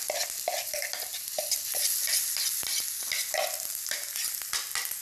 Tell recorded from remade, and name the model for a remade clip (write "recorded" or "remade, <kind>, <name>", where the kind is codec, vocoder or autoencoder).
recorded